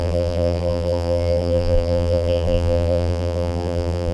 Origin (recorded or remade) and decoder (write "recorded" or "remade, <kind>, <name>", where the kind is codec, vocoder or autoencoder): remade, vocoder, BigVGAN v2